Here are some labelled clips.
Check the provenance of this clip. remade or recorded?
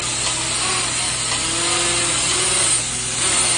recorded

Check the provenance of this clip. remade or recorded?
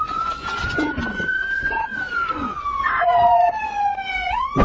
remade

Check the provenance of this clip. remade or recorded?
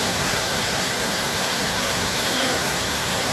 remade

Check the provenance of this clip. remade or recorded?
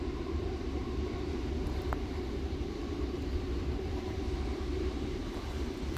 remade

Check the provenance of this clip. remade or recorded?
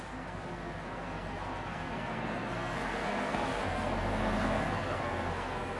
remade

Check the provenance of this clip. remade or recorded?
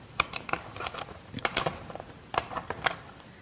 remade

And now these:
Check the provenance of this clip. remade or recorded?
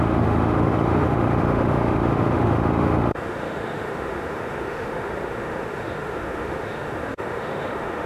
remade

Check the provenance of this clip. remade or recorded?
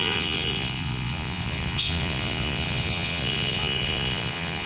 remade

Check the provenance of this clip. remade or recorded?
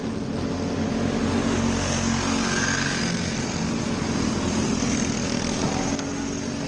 recorded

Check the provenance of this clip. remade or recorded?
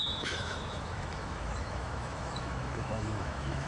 remade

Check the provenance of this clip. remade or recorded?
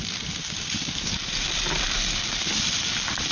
recorded